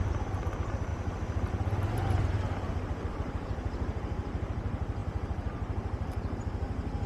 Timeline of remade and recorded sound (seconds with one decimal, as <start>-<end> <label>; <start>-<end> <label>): 0.0-0.9 recorded; 0.9-1.5 remade; 1.5-2.2 recorded; 2.2-4.5 remade; 4.5-7.1 recorded